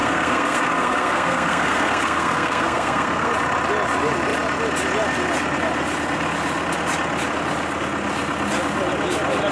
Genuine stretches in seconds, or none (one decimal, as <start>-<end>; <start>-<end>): 3.3-9.5